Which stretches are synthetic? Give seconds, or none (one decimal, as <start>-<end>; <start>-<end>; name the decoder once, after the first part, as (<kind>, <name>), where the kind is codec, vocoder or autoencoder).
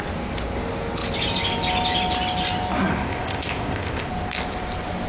2.9-4.1 (codec, ZipCodec)